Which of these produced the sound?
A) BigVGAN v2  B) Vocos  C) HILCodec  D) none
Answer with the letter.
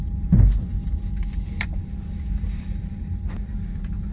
A